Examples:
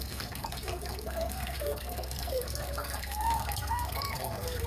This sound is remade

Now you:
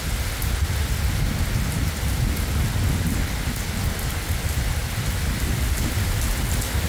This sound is recorded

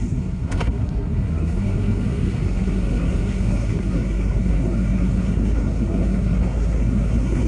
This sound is remade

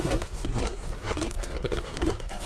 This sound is remade